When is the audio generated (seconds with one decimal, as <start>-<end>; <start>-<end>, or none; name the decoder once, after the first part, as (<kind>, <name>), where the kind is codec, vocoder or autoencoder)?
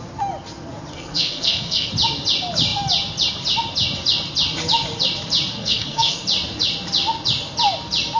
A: 0.9-1.9 (codec, SNAC); 5.6-6.2